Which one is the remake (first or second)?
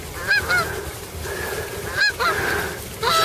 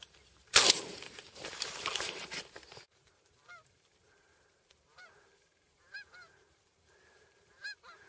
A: second